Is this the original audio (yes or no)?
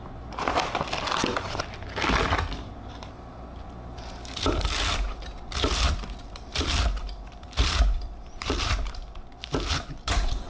no